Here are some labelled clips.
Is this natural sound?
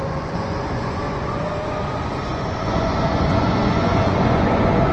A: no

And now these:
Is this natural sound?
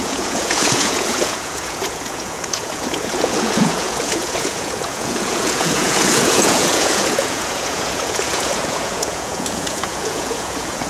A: no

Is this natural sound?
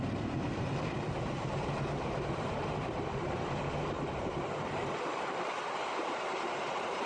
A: no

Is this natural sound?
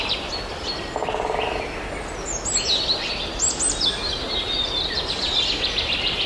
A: yes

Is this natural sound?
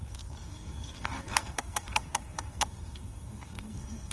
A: no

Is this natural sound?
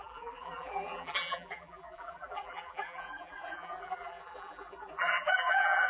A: no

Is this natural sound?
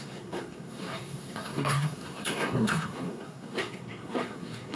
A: no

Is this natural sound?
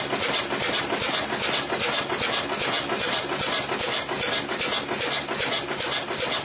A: yes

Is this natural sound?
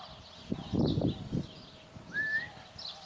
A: yes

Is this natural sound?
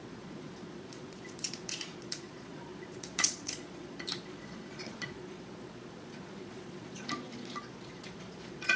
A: no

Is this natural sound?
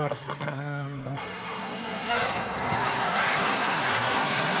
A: no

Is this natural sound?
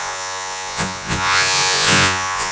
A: no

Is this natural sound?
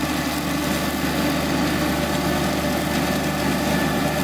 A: yes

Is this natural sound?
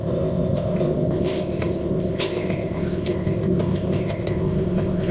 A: no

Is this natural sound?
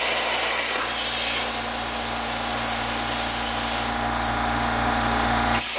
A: yes